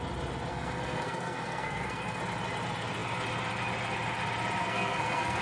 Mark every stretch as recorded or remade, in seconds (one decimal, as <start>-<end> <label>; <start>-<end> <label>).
0.0-0.5 recorded; 0.5-2.2 remade; 2.2-4.6 recorded; 4.6-5.4 remade